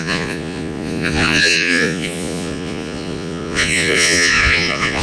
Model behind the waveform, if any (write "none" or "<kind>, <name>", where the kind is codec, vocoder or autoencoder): vocoder, Vocos